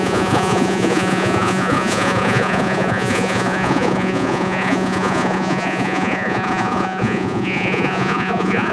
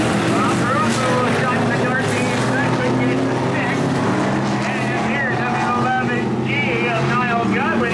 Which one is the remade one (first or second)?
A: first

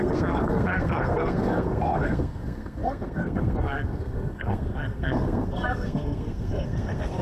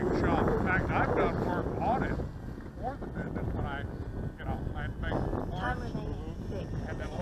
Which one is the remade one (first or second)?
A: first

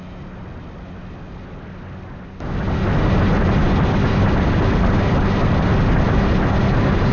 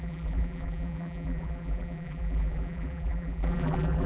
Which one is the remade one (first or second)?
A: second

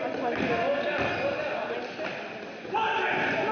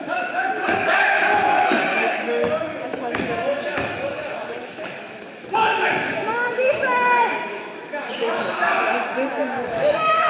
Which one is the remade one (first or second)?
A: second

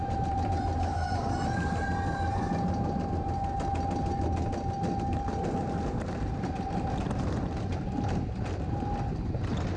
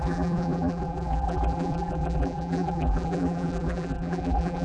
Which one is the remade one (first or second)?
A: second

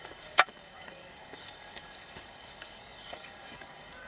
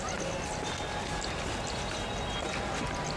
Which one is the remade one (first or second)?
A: first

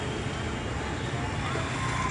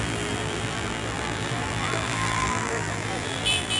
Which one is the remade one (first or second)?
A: second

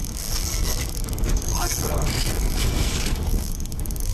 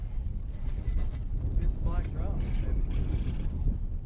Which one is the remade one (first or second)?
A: first